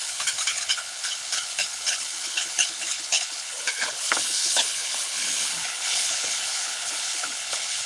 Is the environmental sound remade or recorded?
remade